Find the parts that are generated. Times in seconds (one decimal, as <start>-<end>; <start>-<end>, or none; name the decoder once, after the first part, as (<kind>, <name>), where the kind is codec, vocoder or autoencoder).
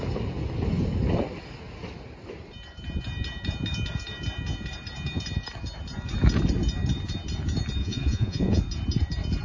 7.8-8.6 (vocoder, Vocos)